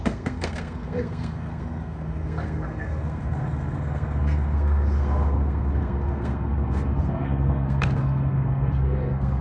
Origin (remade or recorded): remade